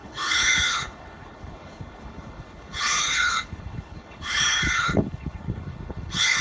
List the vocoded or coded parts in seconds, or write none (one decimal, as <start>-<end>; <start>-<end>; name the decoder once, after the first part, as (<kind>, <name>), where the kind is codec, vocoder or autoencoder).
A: 0.0-6.4 (codec, HILCodec)

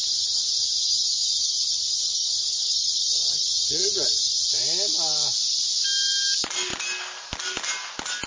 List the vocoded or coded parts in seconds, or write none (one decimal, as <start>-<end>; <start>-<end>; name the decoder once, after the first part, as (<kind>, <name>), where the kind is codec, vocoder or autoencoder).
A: 0.0-4.5 (vocoder, HiFi-GAN)

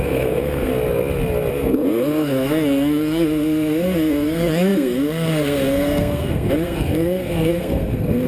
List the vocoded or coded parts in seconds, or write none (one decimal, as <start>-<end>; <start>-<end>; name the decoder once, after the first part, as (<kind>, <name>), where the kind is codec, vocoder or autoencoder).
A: 0.0-0.7 (codec, SNAC); 1.5-8.3

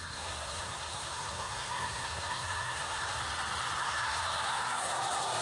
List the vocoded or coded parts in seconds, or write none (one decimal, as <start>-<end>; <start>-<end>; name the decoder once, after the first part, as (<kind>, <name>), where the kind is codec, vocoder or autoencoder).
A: 0.0-3.2 (codec, SNAC); 3.8-5.4

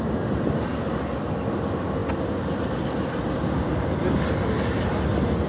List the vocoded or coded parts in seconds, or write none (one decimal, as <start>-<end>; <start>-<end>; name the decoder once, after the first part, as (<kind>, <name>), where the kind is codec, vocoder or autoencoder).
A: none

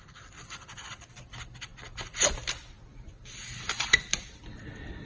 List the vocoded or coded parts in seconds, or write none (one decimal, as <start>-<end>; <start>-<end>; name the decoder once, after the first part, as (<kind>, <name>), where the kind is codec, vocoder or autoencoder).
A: none

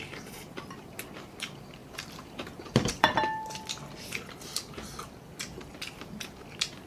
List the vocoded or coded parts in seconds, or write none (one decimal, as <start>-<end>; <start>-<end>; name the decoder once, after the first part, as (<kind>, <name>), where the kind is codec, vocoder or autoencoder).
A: 1.8-3.1 (vocoder, BigVGAN v2)

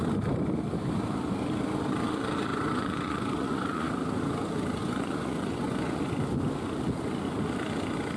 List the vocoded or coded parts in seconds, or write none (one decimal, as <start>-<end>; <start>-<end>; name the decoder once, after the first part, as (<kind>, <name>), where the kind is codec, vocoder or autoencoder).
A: 2.5-3.9 (vocoder, Vocos); 4.8-6.0